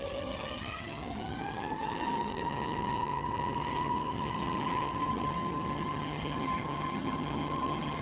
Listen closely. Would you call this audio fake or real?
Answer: fake